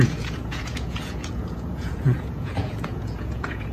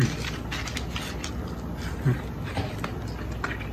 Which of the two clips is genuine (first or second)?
second